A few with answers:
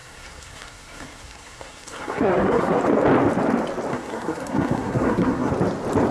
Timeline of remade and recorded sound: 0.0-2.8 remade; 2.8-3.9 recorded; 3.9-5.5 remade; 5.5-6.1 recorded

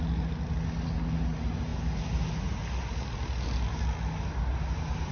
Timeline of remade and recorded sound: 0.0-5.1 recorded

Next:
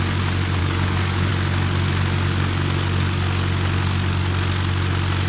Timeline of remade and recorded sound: 0.0-0.6 recorded; 0.6-1.3 remade; 1.3-5.3 recorded

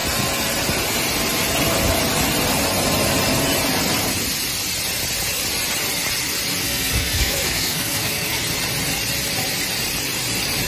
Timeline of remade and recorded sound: 0.0-6.6 recorded; 6.6-8.4 remade; 8.4-10.7 recorded

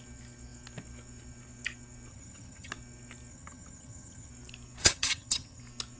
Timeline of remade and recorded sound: 0.0-2.1 recorded; 2.1-2.7 remade; 2.7-3.3 recorded; 3.3-4.3 remade; 4.3-4.8 recorded; 4.8-5.6 remade; 5.6-6.0 recorded

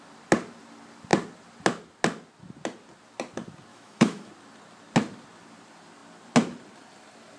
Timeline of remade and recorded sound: 0.0-3.7 recorded; 3.7-4.3 remade; 4.3-7.4 recorded

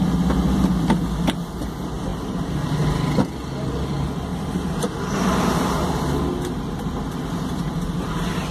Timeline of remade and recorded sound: 0.0-8.5 recorded

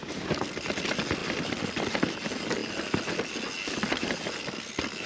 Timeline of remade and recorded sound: 0.0-5.1 recorded